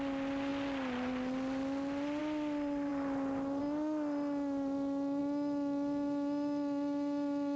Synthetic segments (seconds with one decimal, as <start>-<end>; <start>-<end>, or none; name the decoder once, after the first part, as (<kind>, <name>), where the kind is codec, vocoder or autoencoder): none

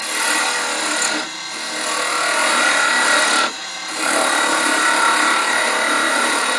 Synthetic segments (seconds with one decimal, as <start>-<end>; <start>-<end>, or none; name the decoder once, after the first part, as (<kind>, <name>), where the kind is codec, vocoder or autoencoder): 2.4-6.6 (vocoder, BigVGAN v2)